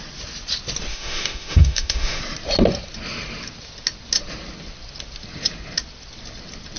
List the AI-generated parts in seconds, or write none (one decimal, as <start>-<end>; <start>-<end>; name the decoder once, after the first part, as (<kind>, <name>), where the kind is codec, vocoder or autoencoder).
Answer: 0.9-2.2 (autoencoder, DAC-VAE)

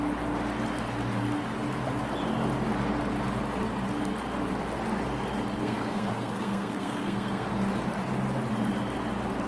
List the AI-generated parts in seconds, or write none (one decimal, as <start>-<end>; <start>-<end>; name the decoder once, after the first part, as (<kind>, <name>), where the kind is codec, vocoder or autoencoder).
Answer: 5.6-7.5 (codec, SNAC)